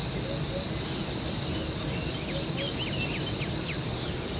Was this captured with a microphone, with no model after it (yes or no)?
yes